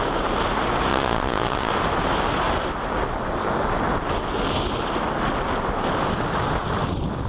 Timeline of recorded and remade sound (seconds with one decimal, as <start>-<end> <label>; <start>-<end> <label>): 0.0-0.9 recorded; 0.9-1.7 remade; 1.7-7.3 recorded